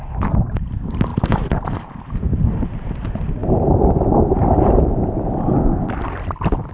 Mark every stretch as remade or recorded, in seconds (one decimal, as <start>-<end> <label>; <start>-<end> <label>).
0.0-1.1 recorded; 1.1-2.6 remade; 2.6-3.4 recorded; 3.4-5.1 remade; 5.1-6.7 recorded